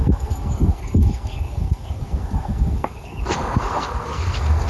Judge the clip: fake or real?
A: fake